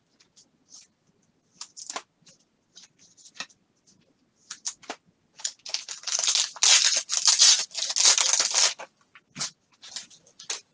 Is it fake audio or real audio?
real